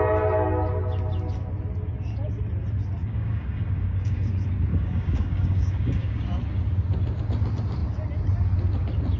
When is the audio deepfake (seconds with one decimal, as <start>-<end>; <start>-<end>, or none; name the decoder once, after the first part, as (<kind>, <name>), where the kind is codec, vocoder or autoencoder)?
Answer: 3.0-4.3 (codec, DAC); 4.7-6.2